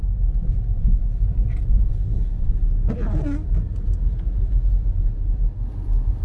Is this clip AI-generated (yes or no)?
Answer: no